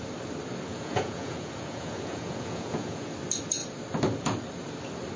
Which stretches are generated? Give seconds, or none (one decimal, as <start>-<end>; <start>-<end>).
0.7-3.1